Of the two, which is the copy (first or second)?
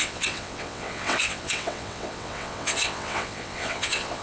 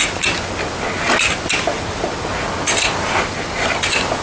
first